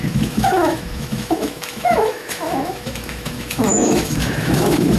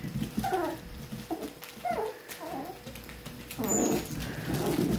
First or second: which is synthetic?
first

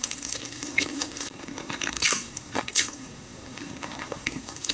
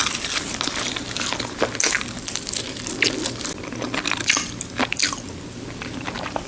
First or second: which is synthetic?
first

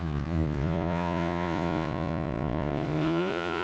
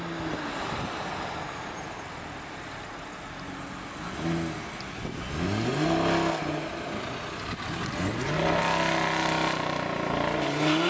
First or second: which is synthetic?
first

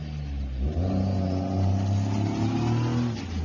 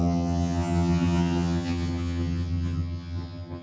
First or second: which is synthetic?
second